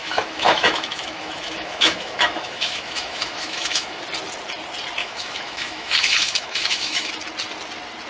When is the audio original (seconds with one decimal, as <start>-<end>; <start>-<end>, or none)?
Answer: 4.0-5.0; 7.1-8.1